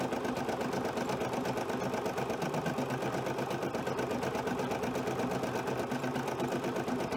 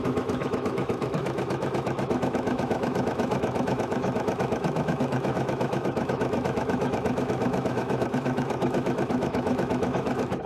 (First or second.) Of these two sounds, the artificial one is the second